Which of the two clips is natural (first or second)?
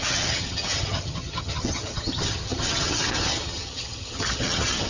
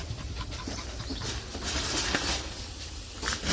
second